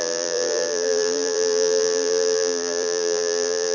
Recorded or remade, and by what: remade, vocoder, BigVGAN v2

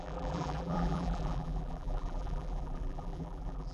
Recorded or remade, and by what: remade, vocoder, BigVGAN v2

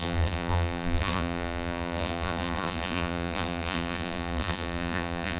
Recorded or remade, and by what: remade, vocoder, BigVGAN v2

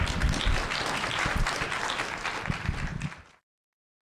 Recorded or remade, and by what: recorded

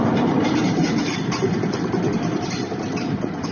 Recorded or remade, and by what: remade, vocoder, BigVGAN v2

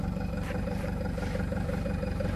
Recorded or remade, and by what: remade, vocoder, BigVGAN v2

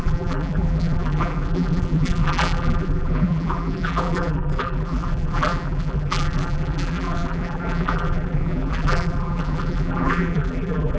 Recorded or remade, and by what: remade, vocoder, BigVGAN v2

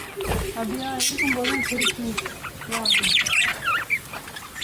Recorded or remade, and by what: recorded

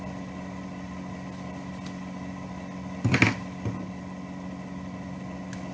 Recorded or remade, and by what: recorded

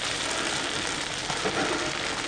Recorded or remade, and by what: recorded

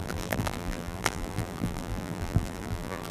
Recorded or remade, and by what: remade, vocoder, BigVGAN v2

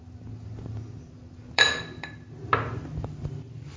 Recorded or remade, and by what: remade, vocoder, BigVGAN v2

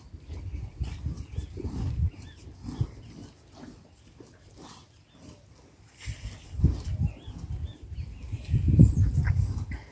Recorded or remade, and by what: recorded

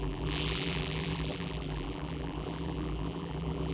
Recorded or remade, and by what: remade, vocoder, BigVGAN v2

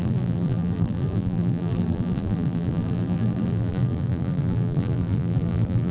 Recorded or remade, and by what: remade, vocoder, BigVGAN v2